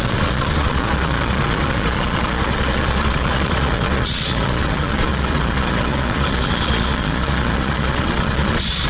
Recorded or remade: remade